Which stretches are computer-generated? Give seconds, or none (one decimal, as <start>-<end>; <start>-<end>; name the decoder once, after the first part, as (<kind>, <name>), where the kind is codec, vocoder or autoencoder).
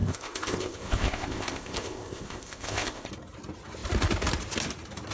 0.0-3.1 (codec, ZipCodec)